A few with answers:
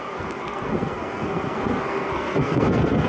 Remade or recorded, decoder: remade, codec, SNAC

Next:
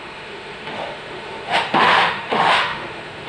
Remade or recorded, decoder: remade, autoencoder, DAC-VAE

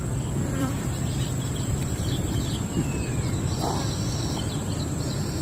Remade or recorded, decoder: remade, vocoder, BigVGAN v2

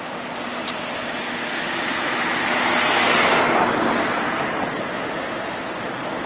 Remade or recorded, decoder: recorded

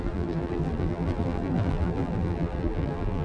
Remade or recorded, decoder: remade, vocoder, BigVGAN v2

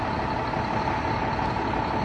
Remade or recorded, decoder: recorded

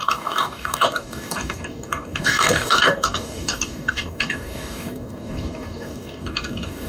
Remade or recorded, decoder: remade, codec, DAC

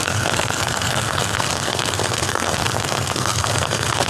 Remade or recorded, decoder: remade, codec, SNAC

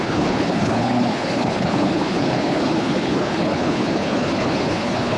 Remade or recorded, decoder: remade, codec, HILCodec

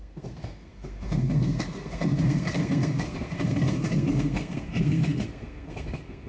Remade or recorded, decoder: remade, codec, SNAC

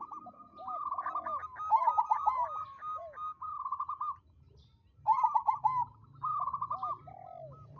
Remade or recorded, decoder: recorded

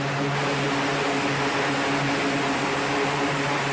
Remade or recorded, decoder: recorded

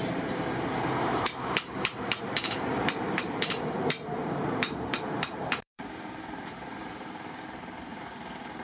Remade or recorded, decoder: remade, vocoder, BigVGAN v2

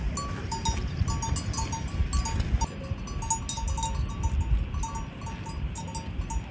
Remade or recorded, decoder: recorded